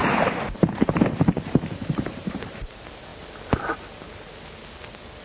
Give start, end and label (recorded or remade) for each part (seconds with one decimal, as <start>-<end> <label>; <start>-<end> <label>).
0.0-2.7 remade; 2.7-5.2 recorded